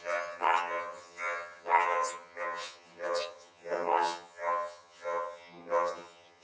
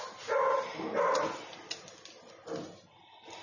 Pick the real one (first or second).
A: second